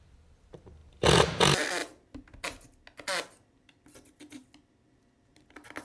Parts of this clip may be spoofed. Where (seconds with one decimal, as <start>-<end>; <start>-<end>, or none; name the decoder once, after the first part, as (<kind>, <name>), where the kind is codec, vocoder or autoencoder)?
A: none